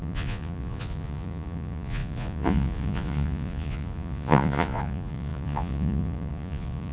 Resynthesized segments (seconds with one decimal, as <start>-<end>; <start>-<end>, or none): 0.0-6.9